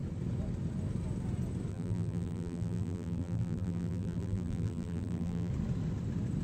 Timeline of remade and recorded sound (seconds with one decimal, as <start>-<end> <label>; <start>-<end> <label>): 0.0-1.7 recorded; 1.7-5.5 remade; 5.5-6.4 recorded